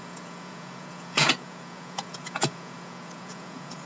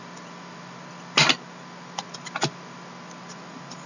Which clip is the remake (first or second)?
first